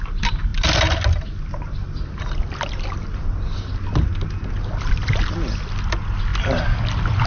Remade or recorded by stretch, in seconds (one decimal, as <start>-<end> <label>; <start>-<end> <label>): 0.0-7.3 recorded